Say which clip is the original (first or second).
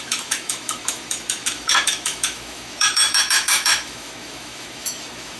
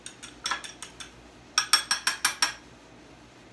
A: second